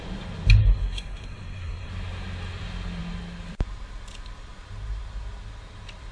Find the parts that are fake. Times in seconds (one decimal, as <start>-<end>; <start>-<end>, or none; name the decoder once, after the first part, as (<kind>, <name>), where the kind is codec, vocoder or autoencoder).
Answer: 0.6-1.9 (codec, SNAC)